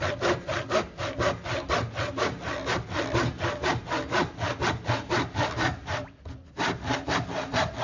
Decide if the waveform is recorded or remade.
recorded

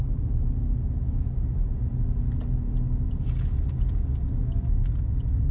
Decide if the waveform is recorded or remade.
recorded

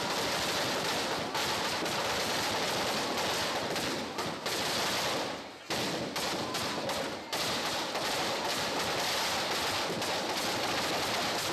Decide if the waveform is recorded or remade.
recorded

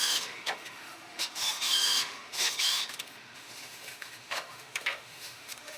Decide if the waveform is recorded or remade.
remade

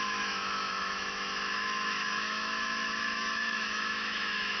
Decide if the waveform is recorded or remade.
remade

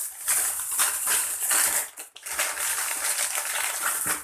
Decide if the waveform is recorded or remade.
recorded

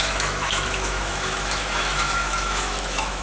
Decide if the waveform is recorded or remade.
remade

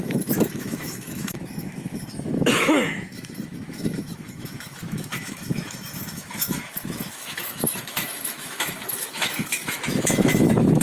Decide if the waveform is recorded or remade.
remade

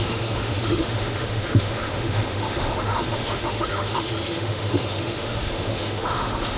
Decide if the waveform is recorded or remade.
remade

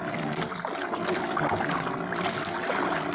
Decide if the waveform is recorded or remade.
recorded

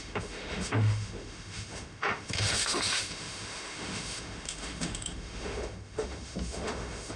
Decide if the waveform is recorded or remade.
remade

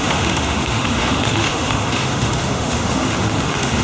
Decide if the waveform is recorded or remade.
remade